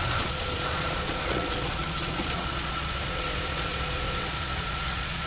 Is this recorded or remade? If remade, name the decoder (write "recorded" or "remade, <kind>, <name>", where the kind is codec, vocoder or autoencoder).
remade, vocoder, Vocos